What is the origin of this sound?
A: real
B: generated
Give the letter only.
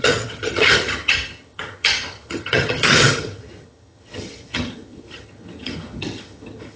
B